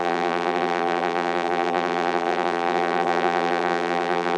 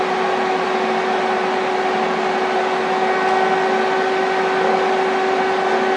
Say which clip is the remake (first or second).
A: first